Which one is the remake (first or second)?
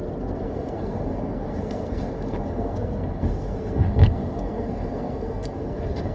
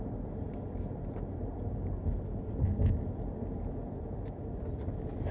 first